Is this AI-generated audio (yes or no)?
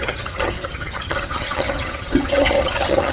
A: yes